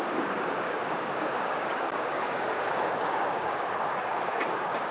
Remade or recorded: remade